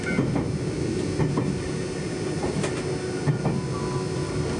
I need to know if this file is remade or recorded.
recorded